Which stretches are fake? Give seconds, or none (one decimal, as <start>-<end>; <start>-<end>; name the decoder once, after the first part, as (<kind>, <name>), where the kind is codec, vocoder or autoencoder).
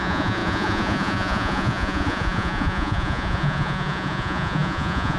0.0-5.2 (vocoder, Vocos)